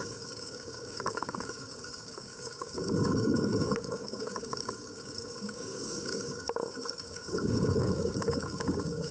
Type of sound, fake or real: fake